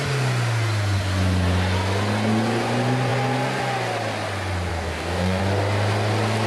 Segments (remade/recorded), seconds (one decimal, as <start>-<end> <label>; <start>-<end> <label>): 0.0-4.7 recorded; 4.7-5.4 remade; 5.4-6.5 recorded